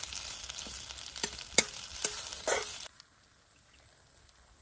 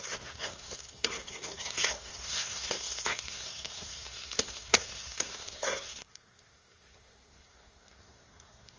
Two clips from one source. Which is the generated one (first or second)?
second